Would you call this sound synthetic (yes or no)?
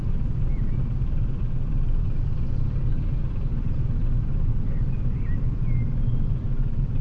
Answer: yes